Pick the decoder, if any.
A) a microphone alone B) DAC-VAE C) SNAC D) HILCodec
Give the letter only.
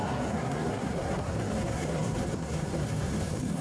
C